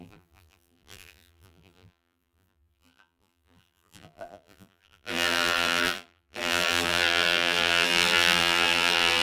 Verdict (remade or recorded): remade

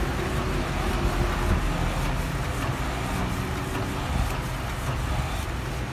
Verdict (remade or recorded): recorded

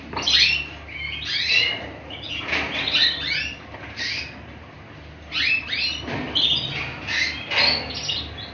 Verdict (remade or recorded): recorded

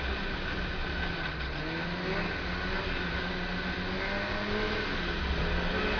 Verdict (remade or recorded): recorded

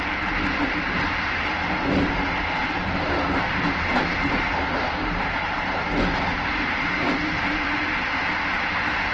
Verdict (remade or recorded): recorded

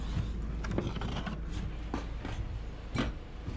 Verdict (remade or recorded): recorded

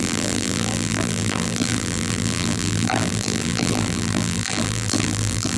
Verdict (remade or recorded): remade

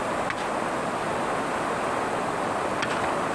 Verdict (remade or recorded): recorded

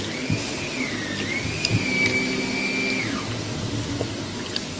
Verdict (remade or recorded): recorded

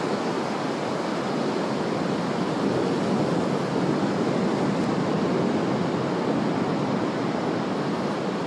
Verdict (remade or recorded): recorded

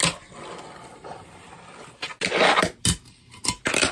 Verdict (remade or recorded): recorded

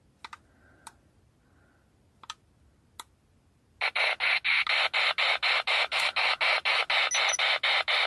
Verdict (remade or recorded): recorded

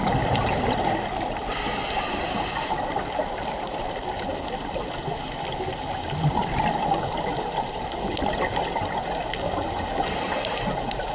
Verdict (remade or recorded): recorded